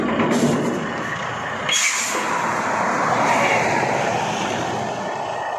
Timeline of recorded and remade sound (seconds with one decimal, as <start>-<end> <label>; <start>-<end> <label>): 0.0-1.3 recorded; 1.3-4.7 remade; 4.7-5.6 recorded